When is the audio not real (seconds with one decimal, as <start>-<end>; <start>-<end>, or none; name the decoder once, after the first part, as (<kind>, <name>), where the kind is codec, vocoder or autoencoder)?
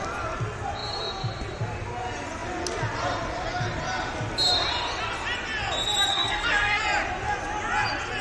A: 6.1-6.8 (codec, SNAC)